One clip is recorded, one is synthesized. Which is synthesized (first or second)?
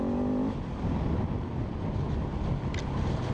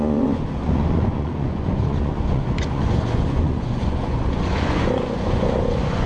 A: second